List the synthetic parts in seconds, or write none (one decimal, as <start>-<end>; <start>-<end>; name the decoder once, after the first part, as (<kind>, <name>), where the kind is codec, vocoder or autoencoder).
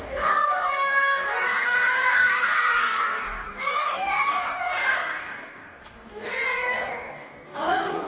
0.0-8.1 (codec, DAC)